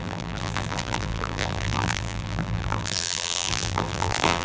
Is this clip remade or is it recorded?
remade